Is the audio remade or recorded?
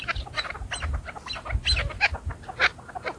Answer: recorded